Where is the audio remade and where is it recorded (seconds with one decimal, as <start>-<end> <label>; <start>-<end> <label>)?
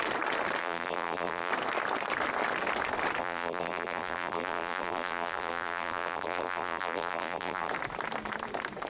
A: 0.0-0.6 recorded; 0.6-1.5 remade; 1.5-3.2 recorded; 3.2-7.7 remade; 7.7-8.9 recorded